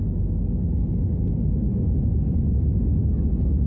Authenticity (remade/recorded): recorded